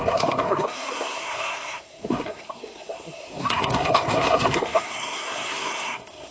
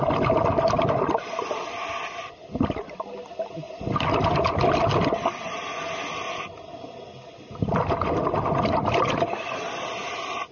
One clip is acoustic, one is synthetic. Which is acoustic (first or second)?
second